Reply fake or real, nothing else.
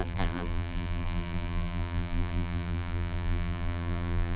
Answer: fake